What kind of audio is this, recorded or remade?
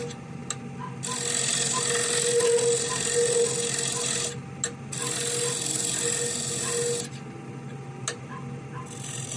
recorded